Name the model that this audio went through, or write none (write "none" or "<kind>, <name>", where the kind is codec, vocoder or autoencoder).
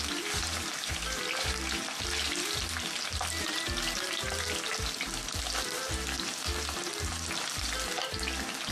none